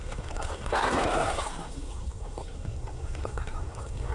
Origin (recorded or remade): remade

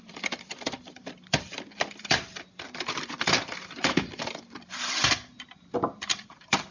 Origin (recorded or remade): remade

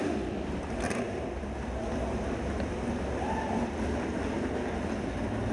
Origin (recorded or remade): recorded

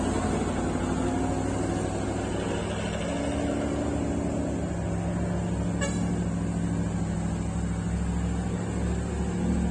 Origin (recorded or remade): recorded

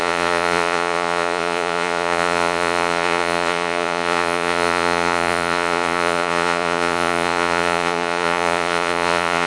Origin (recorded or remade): remade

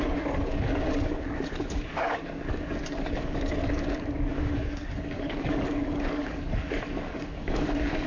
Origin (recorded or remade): remade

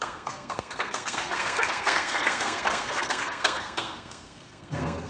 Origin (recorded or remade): remade